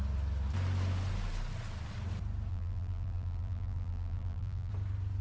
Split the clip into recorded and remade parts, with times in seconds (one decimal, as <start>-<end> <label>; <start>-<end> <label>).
0.0-2.5 recorded; 2.5-4.7 remade; 4.7-5.2 recorded

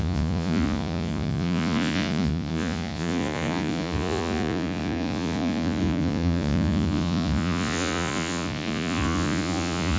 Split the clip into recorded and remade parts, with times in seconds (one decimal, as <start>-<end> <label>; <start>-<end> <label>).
0.0-10.0 remade